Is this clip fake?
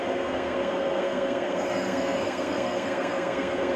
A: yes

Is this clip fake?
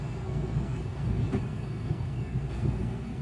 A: yes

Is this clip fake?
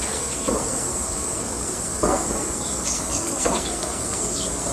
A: yes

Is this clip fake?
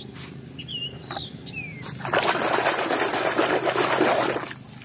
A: no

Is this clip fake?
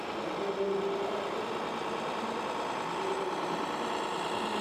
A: no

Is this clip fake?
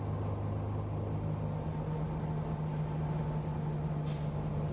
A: no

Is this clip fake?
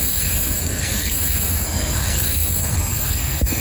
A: yes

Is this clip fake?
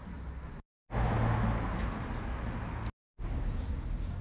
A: no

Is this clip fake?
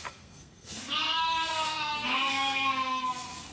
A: yes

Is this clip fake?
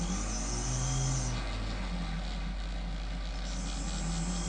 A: no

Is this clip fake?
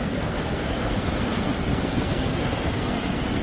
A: yes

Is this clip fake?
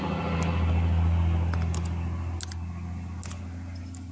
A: no